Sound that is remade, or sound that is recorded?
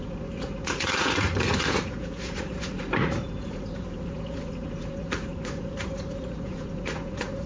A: remade